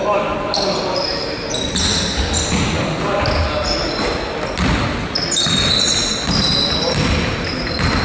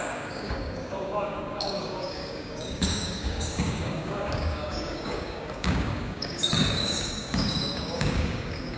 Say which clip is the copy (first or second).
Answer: second